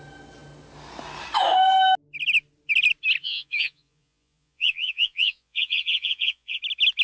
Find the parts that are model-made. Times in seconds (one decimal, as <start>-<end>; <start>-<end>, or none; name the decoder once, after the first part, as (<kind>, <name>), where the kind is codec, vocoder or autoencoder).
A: 3.2-6.6 (vocoder, Vocos)